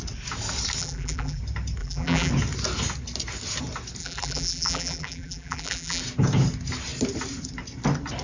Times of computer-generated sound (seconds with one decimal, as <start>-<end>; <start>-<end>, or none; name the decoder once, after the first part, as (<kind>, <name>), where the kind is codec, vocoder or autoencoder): 0.8-1.4 (vocoder, BigVGAN v2); 1.8-2.3; 4.0-6.0